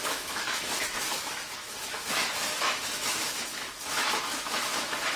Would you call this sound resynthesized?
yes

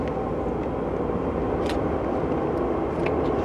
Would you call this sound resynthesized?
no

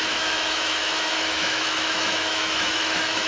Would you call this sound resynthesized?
yes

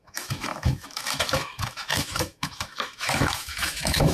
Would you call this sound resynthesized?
yes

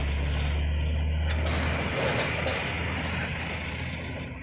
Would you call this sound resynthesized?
no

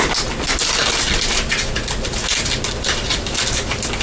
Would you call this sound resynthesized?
no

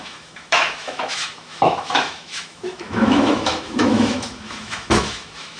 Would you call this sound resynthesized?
yes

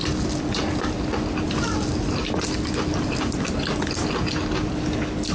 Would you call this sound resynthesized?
no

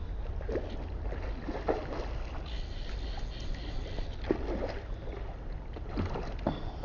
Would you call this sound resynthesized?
no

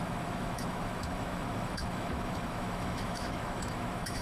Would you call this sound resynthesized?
yes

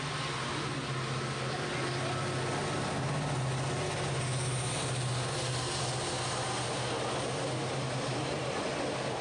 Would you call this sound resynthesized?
no